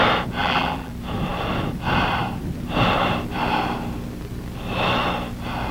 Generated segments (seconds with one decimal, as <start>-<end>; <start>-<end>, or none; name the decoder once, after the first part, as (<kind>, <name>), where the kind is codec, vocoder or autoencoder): 0.4-0.9 (vocoder, BigVGAN v2)